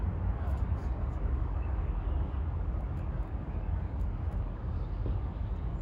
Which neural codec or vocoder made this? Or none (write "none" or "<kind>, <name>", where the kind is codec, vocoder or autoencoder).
codec, DAC